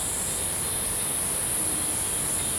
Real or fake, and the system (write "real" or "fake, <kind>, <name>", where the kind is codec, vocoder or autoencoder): real